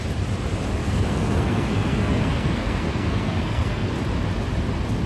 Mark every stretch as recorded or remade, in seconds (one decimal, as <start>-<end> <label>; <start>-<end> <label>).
0.0-0.8 recorded; 0.8-3.9 remade; 3.9-5.1 recorded